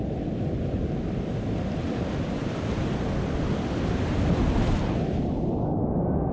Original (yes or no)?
yes